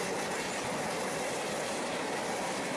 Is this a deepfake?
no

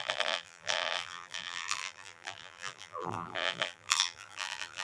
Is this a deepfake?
yes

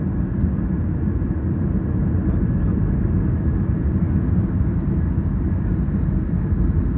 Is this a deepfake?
no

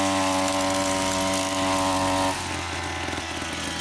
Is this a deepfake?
no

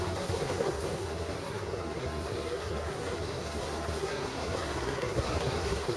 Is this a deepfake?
yes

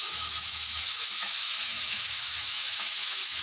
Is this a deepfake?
yes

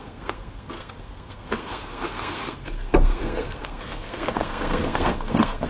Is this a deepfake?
yes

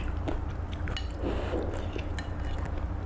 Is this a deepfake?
no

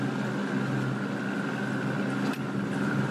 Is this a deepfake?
no